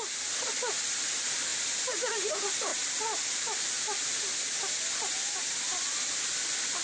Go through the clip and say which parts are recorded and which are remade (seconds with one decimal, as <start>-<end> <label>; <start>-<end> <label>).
0.0-1.5 remade; 1.5-2.1 recorded; 2.1-2.7 remade; 2.7-6.3 recorded; 6.3-6.8 remade